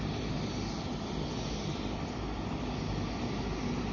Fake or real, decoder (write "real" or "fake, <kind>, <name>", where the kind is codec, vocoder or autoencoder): real